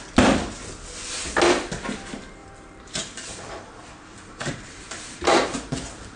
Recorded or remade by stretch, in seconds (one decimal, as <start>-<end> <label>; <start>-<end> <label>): 0.0-2.4 recorded; 2.4-6.2 remade